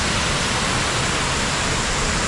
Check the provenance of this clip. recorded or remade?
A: recorded